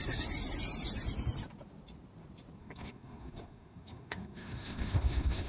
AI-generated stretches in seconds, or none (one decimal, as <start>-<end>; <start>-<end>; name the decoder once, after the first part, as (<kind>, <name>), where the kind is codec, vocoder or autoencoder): 2.6-5.5 (codec, SNAC)